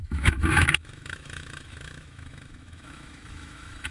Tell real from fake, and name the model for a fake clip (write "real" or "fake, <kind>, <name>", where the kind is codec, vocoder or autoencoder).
fake, autoencoder, DAC-VAE